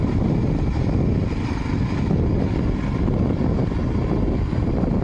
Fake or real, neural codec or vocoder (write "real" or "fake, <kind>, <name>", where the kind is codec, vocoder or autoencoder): real